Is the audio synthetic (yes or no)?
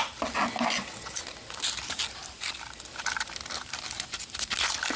no